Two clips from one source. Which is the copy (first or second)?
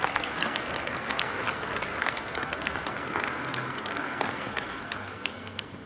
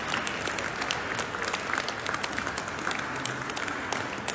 first